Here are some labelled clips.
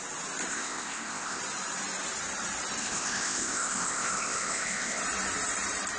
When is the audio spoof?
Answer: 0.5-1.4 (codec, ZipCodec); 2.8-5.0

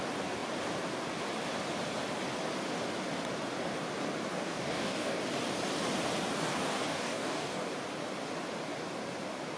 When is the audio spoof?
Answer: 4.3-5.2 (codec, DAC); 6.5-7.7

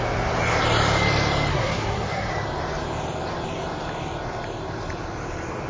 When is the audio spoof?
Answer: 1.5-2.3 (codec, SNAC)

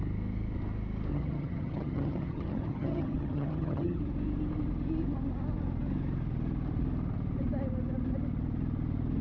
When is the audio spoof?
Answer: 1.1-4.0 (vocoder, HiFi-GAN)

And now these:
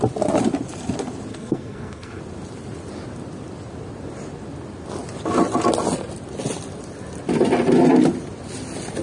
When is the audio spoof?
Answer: 1.3-2.2 (codec, SNAC)